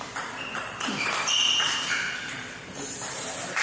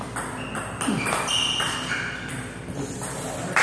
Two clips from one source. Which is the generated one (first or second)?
first